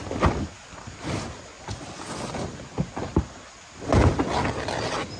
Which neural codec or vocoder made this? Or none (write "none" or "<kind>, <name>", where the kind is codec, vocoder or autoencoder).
none